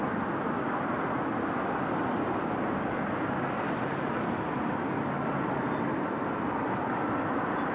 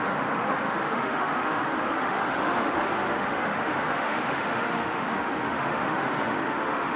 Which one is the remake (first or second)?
second